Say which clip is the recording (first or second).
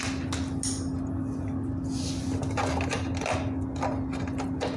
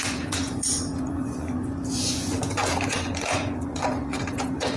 first